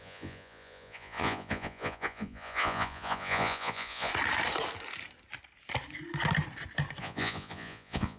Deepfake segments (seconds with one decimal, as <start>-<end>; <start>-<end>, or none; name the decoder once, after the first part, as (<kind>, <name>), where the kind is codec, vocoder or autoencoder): 0.0-4.1 (vocoder, Vocos); 7.0-8.2